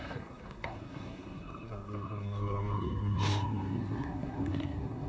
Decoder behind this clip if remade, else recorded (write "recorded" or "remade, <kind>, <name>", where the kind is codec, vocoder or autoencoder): remade, codec, SNAC